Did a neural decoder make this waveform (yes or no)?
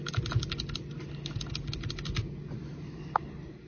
no